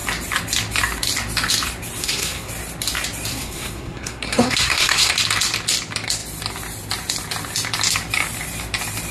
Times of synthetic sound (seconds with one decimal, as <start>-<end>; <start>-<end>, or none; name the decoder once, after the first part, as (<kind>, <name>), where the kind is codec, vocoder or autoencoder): 2.0-2.5 (codec, SNAC); 3.3-5.1